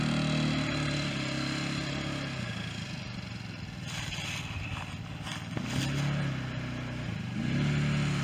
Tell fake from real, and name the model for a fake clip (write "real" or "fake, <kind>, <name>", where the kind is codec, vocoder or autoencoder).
real